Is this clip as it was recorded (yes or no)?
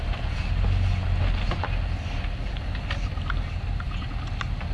yes